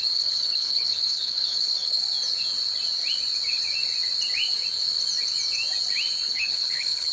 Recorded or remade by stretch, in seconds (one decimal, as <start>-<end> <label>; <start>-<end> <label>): 0.0-2.0 remade; 2.0-6.3 recorded; 6.3-7.1 remade